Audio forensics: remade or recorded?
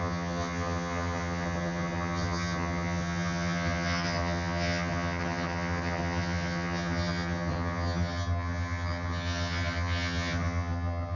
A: remade